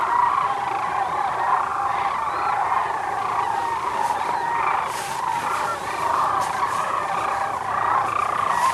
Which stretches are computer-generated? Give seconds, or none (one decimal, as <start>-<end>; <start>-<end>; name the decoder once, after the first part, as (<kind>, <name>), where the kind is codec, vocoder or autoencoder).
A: none